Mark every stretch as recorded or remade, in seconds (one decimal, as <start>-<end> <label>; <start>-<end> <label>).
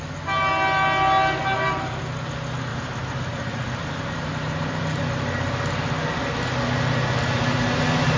0.0-1.4 recorded; 1.4-2.0 remade; 2.0-2.7 recorded; 2.7-5.0 remade; 5.0-8.2 recorded